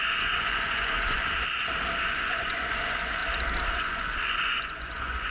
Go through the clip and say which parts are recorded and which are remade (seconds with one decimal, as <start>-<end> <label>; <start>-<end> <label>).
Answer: 0.0-1.2 remade; 1.2-2.1 recorded; 2.1-3.2 remade; 3.2-3.7 recorded; 3.7-5.3 remade